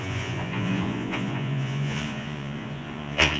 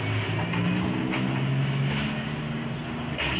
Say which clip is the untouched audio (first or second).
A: second